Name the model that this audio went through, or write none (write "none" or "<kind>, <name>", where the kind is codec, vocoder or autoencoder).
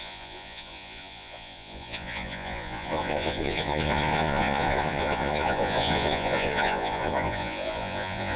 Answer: vocoder, Vocos